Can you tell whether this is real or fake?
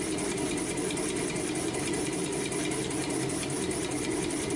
fake